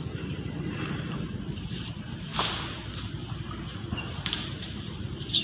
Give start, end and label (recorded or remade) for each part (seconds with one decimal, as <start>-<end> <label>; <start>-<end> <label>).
0.0-2.3 remade; 2.3-4.0 recorded; 4.0-5.4 remade